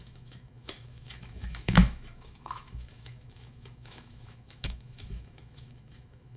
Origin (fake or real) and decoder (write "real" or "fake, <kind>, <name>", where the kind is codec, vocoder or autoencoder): fake, autoencoder, DAC-VAE